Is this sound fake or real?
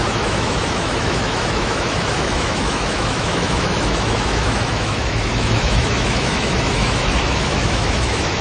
fake